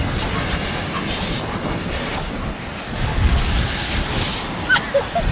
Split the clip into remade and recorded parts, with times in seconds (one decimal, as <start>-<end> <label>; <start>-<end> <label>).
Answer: 0.0-3.1 recorded; 3.1-3.9 remade; 3.9-5.3 recorded